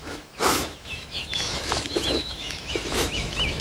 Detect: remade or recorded remade